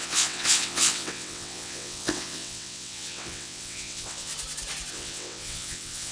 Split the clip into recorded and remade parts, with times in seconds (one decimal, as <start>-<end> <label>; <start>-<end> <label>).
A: 0.0-4.3 remade; 4.3-4.9 recorded; 4.9-6.1 remade